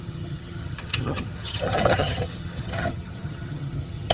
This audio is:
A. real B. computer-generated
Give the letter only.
B